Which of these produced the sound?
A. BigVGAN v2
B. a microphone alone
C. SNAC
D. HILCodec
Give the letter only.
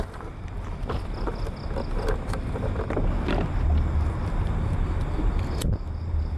A